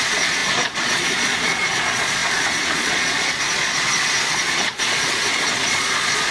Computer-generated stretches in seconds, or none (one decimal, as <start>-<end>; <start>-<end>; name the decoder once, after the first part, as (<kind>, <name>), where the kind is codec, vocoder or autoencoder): 0.0-6.3 (vocoder, Vocos)